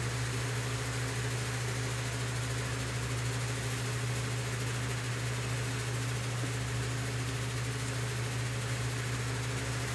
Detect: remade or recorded recorded